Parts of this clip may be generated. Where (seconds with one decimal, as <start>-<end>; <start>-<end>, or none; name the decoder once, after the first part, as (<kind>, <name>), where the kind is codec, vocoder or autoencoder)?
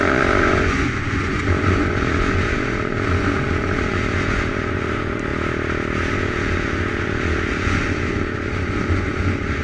0.0-5.3 (vocoder, Vocos); 6.1-9.6